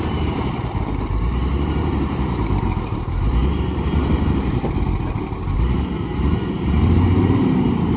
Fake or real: fake